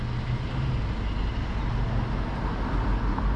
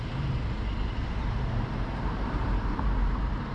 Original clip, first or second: first